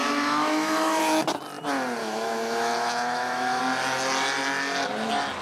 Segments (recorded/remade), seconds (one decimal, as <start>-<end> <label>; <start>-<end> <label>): 0.0-1.0 remade; 1.0-2.0 recorded; 2.0-3.6 remade; 3.6-5.4 recorded